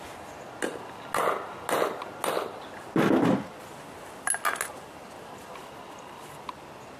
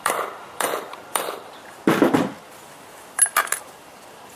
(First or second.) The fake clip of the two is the second